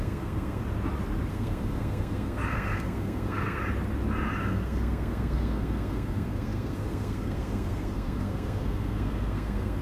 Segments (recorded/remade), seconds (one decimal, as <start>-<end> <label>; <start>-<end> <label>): 0.0-0.6 remade; 0.6-1.3 recorded; 1.3-3.6 remade; 3.6-4.4 recorded; 4.4-9.8 remade